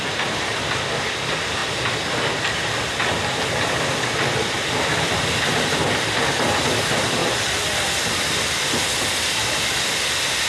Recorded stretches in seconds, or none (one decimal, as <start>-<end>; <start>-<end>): 0.0-10.5